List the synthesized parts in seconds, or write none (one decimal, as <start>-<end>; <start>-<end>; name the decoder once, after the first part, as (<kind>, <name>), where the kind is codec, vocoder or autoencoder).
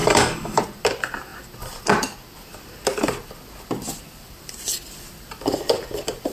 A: 0.0-0.6 (codec, DAC)